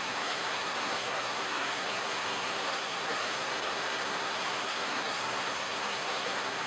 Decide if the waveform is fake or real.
fake